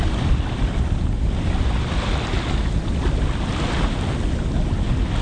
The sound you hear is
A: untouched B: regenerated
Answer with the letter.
A